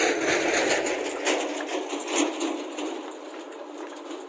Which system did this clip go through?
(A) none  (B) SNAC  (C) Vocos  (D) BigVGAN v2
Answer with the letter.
A